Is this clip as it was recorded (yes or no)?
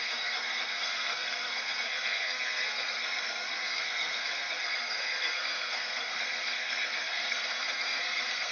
no